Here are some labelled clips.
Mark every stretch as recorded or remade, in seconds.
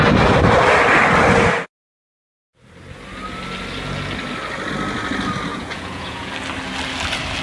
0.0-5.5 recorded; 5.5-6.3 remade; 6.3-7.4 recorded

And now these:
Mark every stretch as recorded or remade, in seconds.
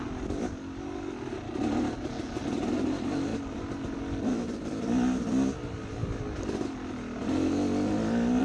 0.0-8.4 recorded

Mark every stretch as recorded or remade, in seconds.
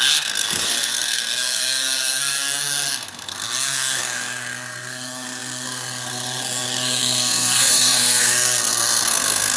0.0-9.6 remade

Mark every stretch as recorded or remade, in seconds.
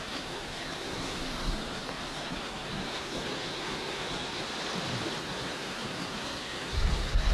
0.0-4.4 remade; 4.4-5.2 recorded; 5.2-7.3 remade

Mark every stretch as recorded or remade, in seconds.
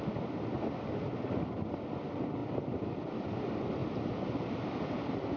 0.0-2.4 recorded; 2.4-3.3 remade; 3.3-3.8 recorded; 3.8-5.4 remade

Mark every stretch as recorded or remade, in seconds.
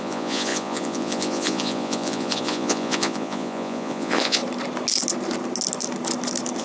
0.0-4.4 remade; 4.4-6.6 recorded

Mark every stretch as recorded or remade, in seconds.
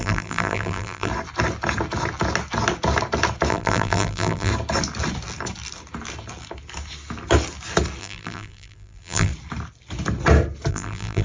0.0-1.1 remade; 1.1-3.5 recorded; 3.5-4.5 remade; 4.5-8.0 recorded; 8.0-9.3 remade; 9.3-10.7 recorded; 10.7-11.2 remade